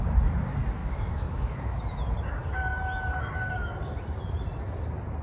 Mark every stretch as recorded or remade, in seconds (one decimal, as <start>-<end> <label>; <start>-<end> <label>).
0.0-0.8 recorded; 0.8-1.8 remade; 1.8-5.2 recorded